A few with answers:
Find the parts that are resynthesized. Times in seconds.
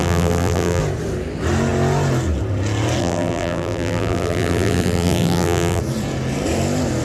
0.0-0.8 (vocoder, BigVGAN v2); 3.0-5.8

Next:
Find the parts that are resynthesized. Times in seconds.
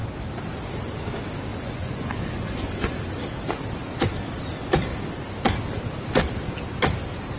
1.5-3.0 (vocoder, Vocos)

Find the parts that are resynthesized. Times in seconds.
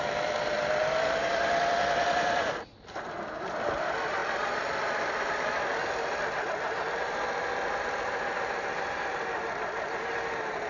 4.2-6.5 (vocoder, BigVGAN v2)